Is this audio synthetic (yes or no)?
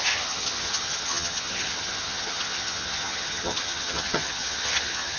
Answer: yes